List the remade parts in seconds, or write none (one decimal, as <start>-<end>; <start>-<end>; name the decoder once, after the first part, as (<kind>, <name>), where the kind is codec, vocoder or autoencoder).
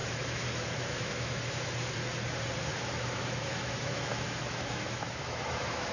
0.0-1.7 (autoencoder, DAC-VAE); 2.7-5.9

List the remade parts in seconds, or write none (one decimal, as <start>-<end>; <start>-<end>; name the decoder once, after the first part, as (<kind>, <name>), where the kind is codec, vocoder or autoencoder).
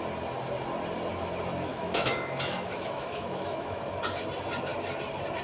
1.7-3.8 (autoencoder, DAC-VAE)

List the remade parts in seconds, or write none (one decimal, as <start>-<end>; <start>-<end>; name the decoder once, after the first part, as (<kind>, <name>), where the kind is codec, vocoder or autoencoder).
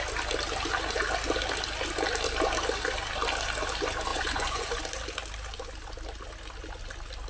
4.1-4.8 (vocoder, Vocos)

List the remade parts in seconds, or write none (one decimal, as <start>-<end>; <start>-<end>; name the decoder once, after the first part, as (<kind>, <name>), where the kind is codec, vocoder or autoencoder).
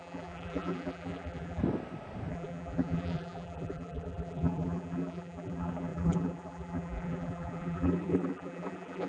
0.0-1.6 (vocoder, BigVGAN v2); 2.3-9.1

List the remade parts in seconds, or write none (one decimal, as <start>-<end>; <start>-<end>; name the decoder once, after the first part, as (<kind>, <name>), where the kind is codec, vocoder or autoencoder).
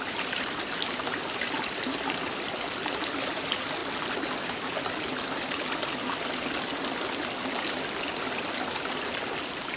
none